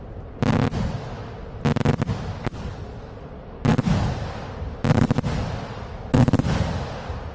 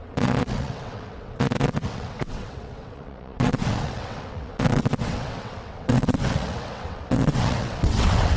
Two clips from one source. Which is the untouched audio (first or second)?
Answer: first